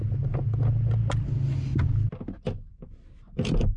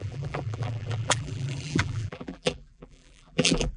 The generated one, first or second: second